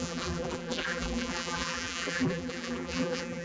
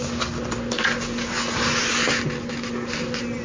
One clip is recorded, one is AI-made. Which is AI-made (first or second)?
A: first